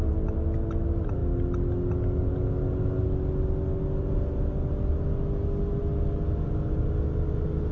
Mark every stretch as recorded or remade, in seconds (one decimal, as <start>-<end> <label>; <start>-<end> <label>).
0.0-7.7 recorded